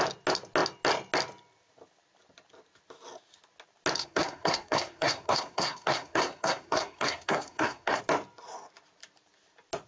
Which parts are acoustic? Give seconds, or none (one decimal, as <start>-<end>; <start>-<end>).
0.0-4.0; 8.0-9.9